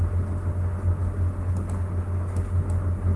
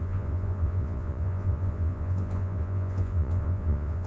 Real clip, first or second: first